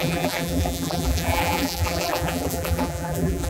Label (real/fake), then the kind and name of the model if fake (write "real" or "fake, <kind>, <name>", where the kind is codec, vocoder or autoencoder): fake, vocoder, BigVGAN v2